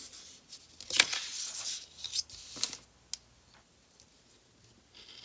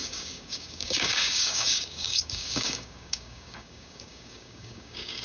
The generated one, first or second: second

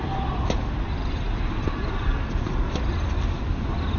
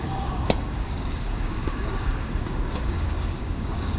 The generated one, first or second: second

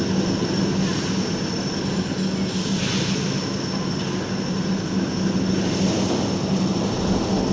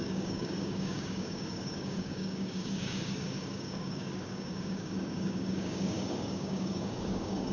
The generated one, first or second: second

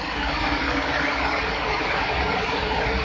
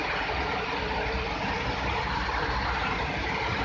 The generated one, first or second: first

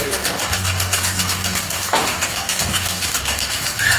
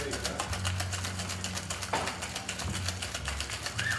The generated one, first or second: first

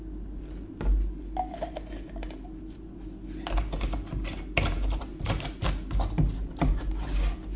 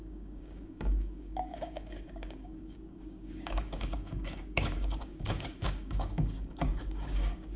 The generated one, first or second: second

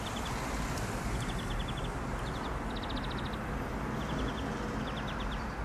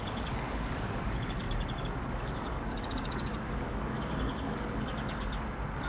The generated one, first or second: second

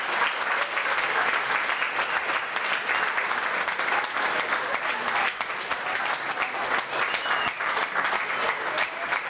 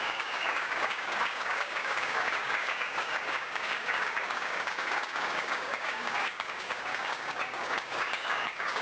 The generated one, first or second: second